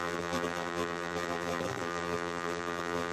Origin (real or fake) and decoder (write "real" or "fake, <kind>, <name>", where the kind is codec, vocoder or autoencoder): fake, vocoder, BigVGAN v2